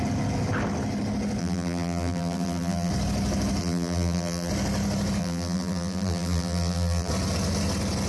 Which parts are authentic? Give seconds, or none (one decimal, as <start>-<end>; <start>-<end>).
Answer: 0.0-1.4; 2.9-3.6; 4.5-5.2; 7.1-8.1